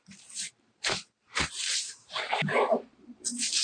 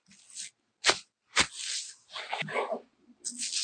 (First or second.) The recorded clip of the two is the second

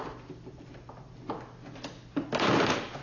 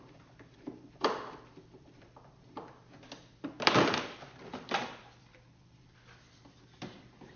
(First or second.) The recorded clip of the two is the first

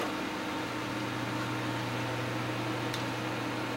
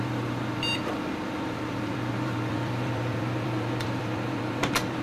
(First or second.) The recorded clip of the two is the first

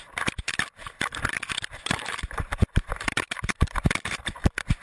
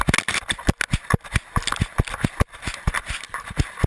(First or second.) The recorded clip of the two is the second